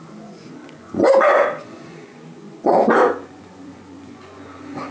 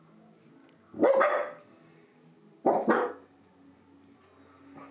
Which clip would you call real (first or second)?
second